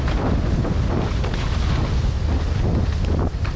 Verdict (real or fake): real